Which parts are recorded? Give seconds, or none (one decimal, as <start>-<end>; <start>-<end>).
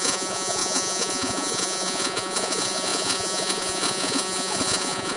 none